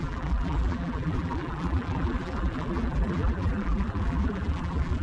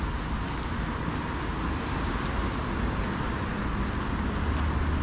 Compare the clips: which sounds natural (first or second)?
second